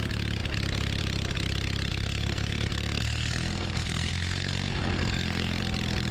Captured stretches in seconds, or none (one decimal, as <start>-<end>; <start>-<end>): 0.0-1.9; 5.6-6.1